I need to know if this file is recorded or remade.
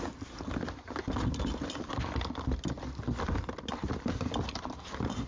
recorded